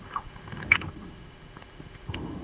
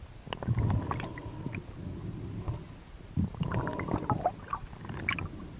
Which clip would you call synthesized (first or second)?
first